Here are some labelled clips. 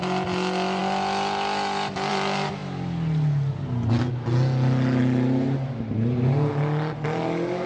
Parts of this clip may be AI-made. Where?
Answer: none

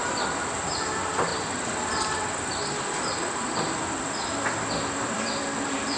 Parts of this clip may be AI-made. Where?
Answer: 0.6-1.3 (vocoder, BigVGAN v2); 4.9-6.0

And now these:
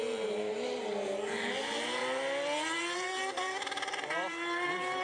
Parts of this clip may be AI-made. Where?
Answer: 0.0-2.0 (vocoder, BigVGAN v2); 2.8-5.0

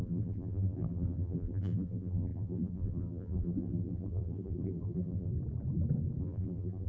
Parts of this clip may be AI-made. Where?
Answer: 0.0-5.3 (vocoder, BigVGAN v2); 6.2-6.9

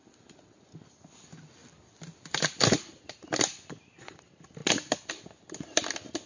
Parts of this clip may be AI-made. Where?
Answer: 1.6-3.0 (vocoder, BigVGAN v2)

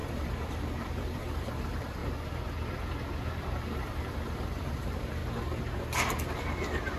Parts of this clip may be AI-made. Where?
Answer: 0.0-2.0 (vocoder, BigVGAN v2); 3.6-5.2